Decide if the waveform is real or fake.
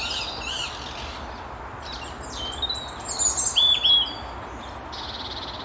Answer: real